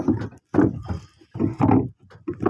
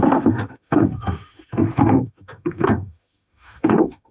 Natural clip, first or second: first